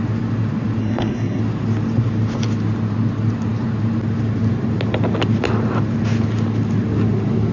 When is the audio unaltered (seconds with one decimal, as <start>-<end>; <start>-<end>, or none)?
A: 0.0-0.8; 1.4-7.5